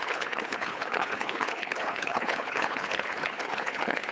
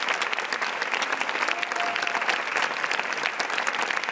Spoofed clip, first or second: first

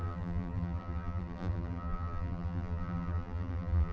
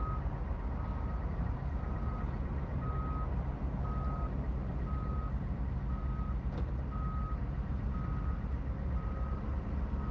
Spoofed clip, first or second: first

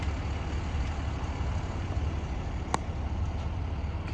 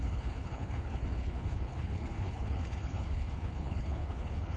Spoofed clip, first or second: second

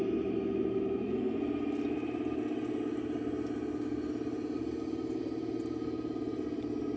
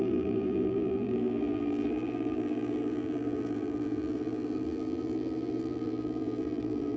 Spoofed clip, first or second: second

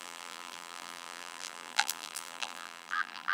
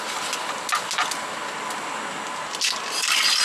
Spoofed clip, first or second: first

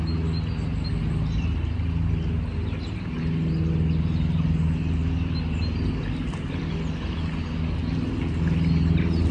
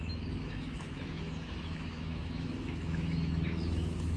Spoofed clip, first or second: second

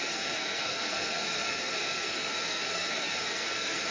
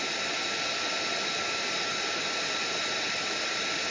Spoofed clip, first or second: first